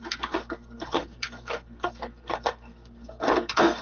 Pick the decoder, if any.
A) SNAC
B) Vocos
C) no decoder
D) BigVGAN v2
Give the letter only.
A